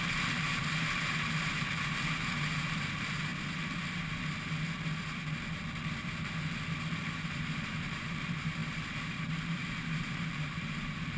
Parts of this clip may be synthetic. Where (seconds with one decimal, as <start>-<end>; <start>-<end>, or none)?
0.0-3.3; 6.0-11.2